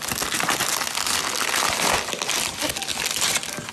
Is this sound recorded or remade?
recorded